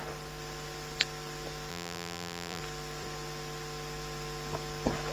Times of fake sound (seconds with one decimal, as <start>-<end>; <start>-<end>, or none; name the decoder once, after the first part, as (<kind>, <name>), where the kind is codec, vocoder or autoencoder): 1.7-2.6 (vocoder, BigVGAN v2)